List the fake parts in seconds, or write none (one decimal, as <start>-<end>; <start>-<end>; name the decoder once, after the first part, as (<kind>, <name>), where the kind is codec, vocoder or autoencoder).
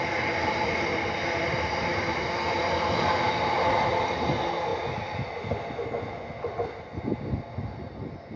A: none